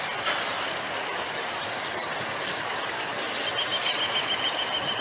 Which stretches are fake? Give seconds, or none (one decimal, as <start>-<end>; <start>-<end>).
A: none